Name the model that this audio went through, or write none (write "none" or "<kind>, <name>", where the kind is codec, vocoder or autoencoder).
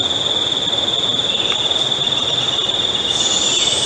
none